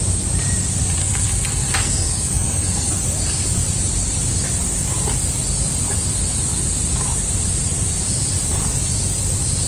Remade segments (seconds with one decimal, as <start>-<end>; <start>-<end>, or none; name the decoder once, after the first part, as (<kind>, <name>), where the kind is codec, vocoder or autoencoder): 1.0-2.9 (codec, SNAC)